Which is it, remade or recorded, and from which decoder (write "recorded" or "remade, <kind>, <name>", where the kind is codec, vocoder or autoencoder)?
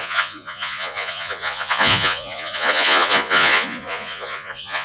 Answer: remade, vocoder, Vocos